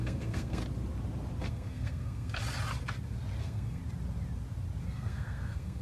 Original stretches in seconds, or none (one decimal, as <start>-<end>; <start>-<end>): 0.6-1.4; 2.4-3.4; 3.8-4.8